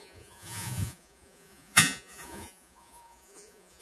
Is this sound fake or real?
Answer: fake